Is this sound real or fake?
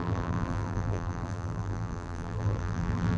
fake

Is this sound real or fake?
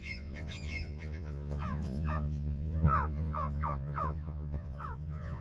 fake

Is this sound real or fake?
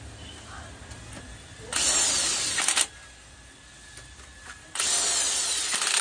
real